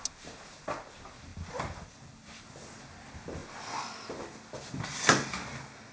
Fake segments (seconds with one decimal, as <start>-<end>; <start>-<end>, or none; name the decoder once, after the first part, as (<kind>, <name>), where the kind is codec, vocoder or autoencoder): 1.3-2.4 (vocoder, BigVGAN v2)

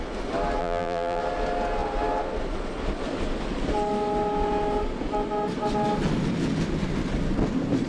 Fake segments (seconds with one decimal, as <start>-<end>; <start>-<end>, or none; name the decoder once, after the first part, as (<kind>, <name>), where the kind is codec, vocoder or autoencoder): 0.6-1.2 (vocoder, BigVGAN v2)

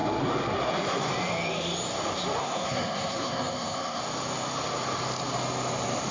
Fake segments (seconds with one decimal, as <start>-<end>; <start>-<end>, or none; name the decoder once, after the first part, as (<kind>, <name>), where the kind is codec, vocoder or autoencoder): 0.0-1.1 (codec, SNAC); 2.4-4.0

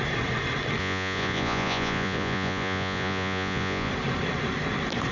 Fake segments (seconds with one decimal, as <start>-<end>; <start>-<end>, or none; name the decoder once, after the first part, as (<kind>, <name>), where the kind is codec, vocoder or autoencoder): 0.8-3.9 (vocoder, Vocos)

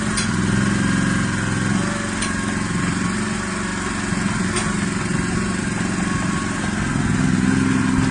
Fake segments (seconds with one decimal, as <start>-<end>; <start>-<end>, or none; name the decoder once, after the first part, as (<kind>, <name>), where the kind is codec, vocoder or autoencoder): none

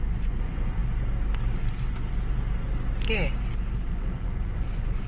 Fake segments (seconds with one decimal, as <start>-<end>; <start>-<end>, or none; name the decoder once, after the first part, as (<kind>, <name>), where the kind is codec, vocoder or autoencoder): 0.0-0.8 (vocoder, Vocos); 3.9-5.1